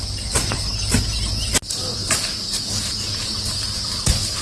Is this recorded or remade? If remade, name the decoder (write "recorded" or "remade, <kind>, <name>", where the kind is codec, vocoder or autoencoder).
recorded